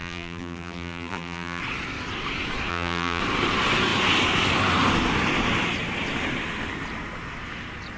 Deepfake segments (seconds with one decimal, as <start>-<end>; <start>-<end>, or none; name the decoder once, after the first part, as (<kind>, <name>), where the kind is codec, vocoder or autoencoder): 0.0-1.6 (vocoder, BigVGAN v2); 2.7-3.2